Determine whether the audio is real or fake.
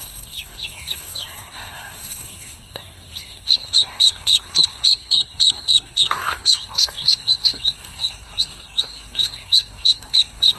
fake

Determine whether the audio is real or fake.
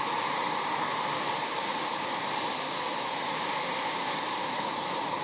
real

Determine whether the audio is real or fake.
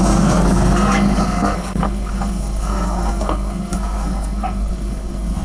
fake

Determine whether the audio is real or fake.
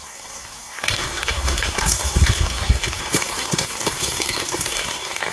fake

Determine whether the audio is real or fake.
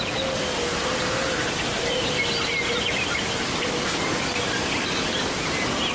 real